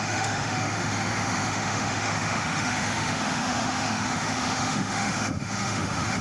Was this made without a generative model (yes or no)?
no